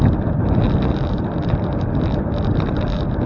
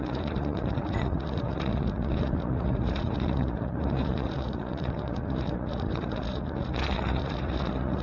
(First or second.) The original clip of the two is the first